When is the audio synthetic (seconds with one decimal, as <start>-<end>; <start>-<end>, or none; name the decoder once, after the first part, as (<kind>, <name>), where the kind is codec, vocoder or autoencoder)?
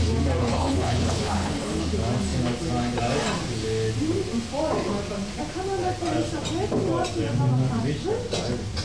0.4-1.8 (codec, HILCodec)